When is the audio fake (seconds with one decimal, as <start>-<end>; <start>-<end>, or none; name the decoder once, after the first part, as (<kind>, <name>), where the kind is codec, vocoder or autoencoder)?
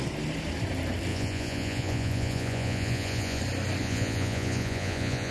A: 1.1-3.4 (vocoder, Vocos); 3.8-5.3